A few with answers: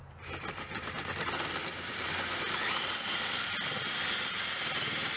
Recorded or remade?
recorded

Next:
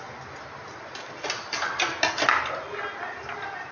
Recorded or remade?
recorded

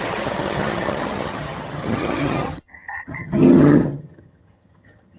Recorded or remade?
remade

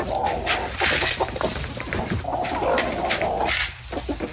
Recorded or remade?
recorded